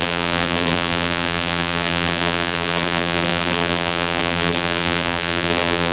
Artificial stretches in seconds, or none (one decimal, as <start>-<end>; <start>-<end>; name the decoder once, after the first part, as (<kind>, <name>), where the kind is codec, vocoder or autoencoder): 0.0-5.9 (vocoder, BigVGAN v2)